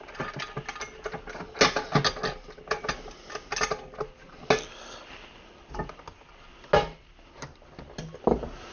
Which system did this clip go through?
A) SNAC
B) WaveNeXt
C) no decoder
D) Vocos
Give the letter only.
C